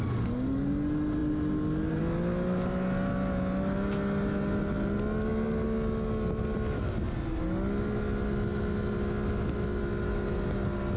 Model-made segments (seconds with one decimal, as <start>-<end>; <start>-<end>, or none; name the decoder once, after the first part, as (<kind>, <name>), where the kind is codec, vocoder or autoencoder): none